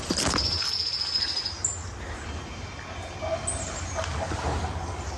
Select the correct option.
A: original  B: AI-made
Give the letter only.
A